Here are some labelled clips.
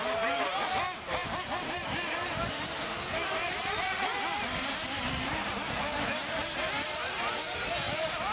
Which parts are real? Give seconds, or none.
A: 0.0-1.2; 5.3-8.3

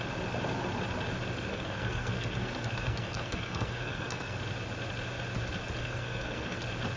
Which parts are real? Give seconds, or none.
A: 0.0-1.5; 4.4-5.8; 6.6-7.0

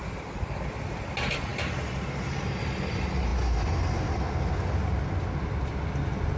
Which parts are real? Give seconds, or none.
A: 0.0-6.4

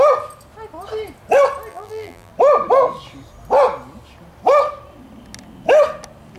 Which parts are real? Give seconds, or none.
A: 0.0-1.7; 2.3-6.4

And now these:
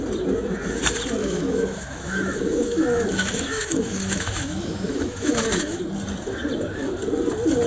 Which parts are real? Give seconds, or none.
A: 0.0-1.2; 5.8-7.7

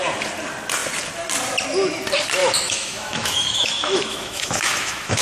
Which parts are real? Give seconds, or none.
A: 0.0-2.4